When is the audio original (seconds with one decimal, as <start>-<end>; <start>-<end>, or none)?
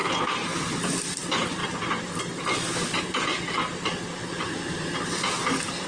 0.0-5.9